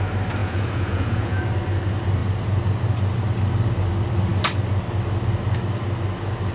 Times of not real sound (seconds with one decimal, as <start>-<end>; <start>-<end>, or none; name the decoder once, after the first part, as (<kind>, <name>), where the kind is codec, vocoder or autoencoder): 0.4-1.4 (vocoder, Vocos)